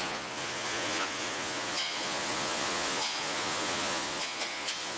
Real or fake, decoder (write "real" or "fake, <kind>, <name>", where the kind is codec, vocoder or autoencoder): fake, vocoder, Vocos